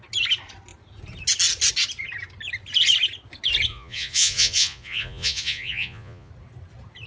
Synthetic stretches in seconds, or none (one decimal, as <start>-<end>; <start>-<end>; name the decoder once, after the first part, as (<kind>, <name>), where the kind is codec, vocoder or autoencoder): 3.7-6.3 (vocoder, Vocos)